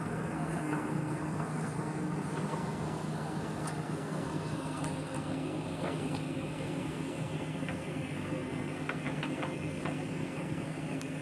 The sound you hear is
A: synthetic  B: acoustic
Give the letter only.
A